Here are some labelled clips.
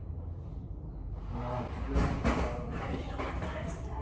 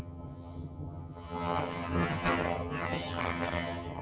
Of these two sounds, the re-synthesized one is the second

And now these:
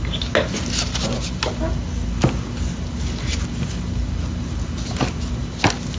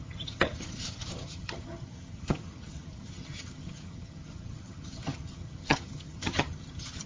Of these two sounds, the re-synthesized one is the second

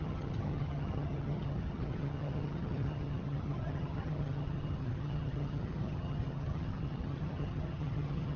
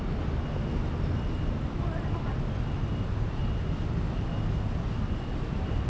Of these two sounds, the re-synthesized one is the first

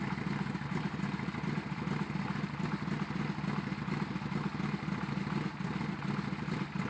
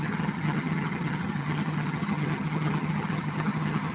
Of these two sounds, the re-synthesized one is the second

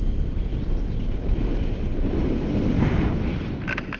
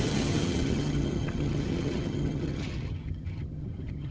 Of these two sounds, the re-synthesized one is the second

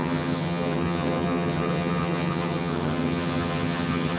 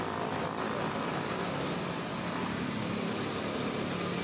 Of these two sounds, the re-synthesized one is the first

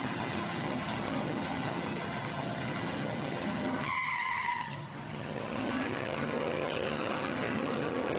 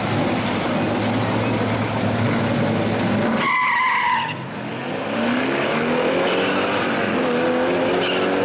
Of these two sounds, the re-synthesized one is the first